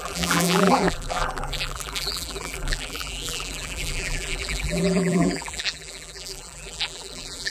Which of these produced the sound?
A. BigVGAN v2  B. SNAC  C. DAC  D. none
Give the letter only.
A